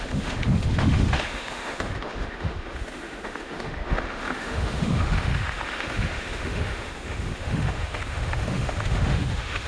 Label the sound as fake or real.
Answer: fake